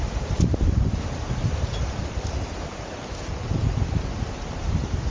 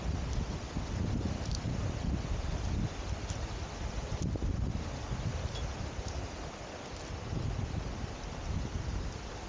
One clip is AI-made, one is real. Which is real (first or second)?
second